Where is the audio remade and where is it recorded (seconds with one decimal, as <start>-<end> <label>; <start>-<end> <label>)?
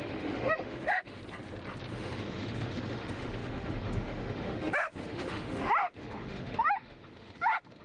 0.0-1.2 remade; 1.2-1.9 recorded; 1.9-7.8 remade